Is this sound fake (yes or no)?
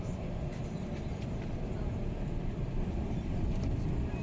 yes